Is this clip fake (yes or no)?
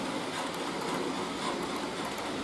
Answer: no